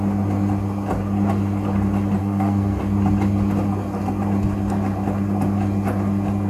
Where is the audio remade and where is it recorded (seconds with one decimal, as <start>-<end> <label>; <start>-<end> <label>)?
0.0-2.2 recorded; 2.2-2.8 remade; 2.8-6.5 recorded